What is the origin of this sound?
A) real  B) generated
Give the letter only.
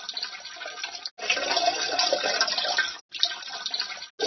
A